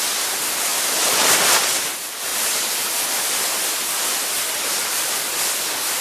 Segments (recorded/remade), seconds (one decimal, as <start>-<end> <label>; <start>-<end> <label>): 0.0-0.7 recorded; 0.7-1.8 remade; 1.8-6.0 recorded